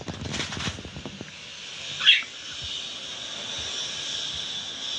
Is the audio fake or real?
real